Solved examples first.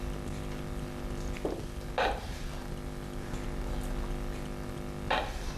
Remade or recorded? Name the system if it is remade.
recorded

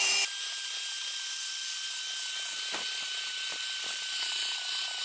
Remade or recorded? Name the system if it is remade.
recorded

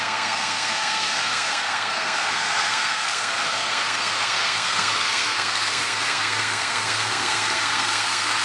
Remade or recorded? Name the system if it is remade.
remade, codec, SNAC